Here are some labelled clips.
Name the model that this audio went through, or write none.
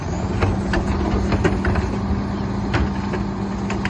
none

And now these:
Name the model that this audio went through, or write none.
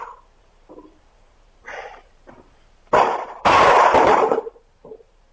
vocoder, BigVGAN v2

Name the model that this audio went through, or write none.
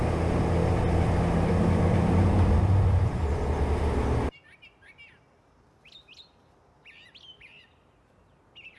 none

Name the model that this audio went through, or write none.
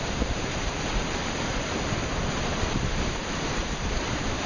vocoder, BigVGAN v2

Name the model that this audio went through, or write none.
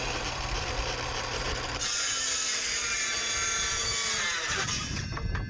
vocoder, BigVGAN v2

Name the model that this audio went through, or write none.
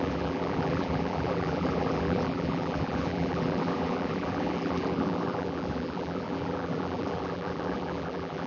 vocoder, BigVGAN v2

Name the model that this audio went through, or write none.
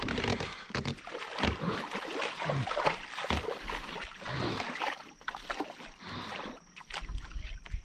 none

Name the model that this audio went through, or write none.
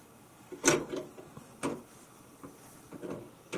none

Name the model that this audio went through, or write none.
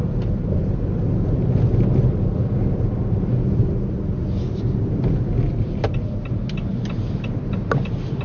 none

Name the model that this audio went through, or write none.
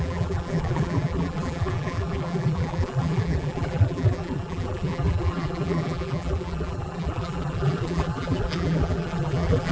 vocoder, BigVGAN v2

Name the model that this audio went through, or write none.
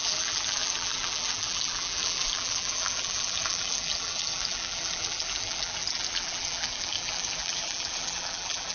vocoder, BigVGAN v2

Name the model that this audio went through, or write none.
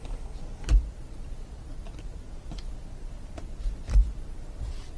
vocoder, BigVGAN v2